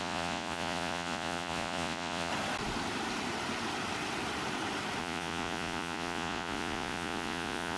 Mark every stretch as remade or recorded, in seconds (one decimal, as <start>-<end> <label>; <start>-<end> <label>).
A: 0.0-2.3 remade; 2.3-5.0 recorded; 5.0-7.8 remade